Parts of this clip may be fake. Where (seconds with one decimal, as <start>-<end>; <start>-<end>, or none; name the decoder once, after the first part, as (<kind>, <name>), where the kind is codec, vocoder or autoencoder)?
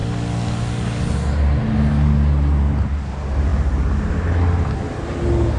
none